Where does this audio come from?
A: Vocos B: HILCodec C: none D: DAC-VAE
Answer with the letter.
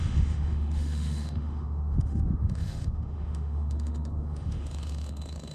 D